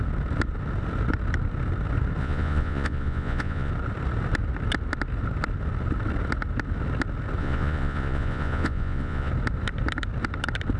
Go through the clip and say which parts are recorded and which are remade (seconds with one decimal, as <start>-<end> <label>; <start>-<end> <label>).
0.0-2.2 recorded; 2.2-3.7 remade; 3.7-7.4 recorded; 7.4-9.3 remade; 9.3-10.8 recorded